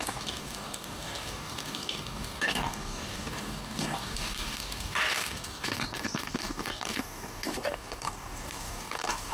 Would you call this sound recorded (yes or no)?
no